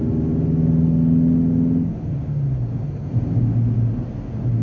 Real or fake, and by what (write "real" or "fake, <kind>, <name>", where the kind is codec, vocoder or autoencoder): real